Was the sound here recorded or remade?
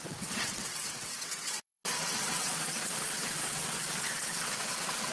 remade